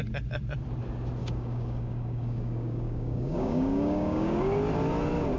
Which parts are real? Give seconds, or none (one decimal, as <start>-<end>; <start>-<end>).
0.0-1.2; 4.4-5.4